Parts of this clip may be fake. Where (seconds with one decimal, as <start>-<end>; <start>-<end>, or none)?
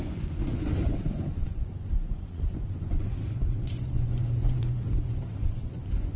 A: 0.0-6.2